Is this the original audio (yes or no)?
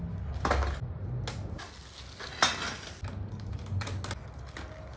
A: yes